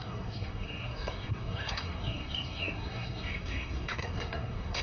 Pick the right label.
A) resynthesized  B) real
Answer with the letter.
A